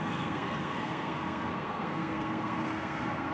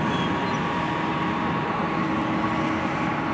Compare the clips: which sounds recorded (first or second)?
second